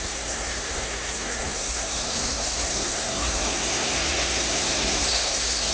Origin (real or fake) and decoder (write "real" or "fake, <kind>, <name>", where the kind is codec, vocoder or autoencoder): fake, codec, SNAC